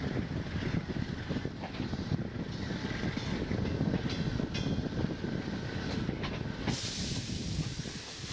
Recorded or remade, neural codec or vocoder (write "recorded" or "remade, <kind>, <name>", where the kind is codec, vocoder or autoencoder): recorded